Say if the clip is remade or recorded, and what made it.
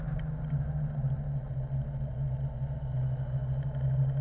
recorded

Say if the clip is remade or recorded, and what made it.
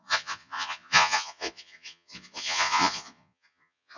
remade, vocoder, Vocos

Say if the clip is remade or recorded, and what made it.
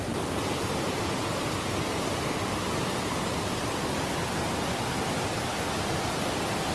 recorded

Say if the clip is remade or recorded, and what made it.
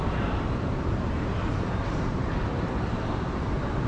remade, vocoder, BigVGAN v2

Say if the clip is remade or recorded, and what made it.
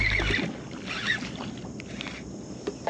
recorded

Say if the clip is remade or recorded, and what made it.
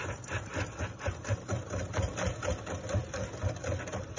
recorded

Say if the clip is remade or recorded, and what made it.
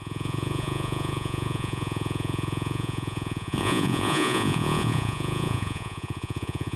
remade, vocoder, Vocos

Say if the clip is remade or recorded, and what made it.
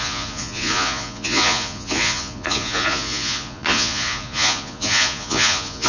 remade, vocoder, Vocos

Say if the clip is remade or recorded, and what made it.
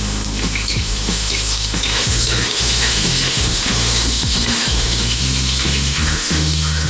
remade, autoencoder, DAC-VAE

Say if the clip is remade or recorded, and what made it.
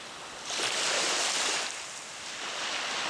recorded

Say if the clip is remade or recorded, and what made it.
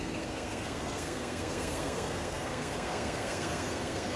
remade, codec, SNAC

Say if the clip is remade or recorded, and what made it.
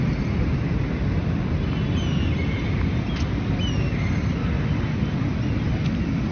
recorded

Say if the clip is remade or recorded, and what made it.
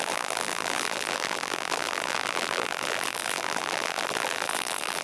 remade, vocoder, BigVGAN v2